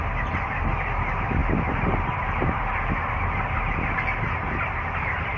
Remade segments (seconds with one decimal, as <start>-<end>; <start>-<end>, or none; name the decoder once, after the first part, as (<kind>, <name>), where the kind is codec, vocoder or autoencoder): none